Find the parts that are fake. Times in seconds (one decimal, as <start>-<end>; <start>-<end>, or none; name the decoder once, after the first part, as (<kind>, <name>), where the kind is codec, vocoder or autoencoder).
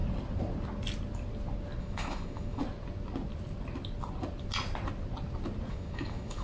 1.8-2.6 (autoencoder, DAC-VAE); 5.7-6.4